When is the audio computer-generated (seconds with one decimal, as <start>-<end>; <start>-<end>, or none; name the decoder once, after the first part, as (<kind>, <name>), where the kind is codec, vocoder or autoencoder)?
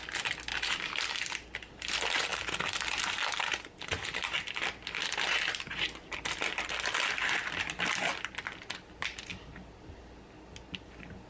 none